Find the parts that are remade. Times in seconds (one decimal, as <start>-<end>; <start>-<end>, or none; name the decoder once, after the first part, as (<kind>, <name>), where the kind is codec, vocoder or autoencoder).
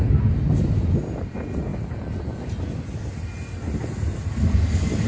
none